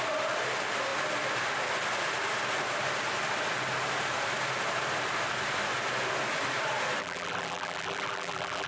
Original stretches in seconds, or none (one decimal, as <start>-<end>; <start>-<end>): 0.0-7.0